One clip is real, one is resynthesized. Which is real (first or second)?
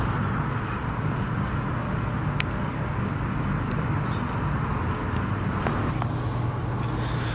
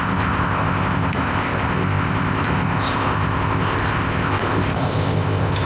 first